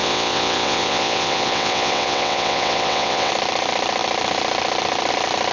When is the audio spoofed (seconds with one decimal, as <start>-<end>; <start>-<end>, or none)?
0.0-3.3